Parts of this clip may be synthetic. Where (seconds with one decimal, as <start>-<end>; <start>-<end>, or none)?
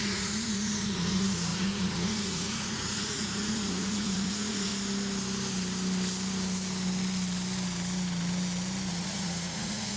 0.0-4.7; 8.9-10.0